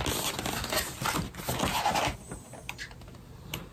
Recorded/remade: recorded